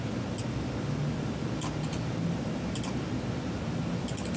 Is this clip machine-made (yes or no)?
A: no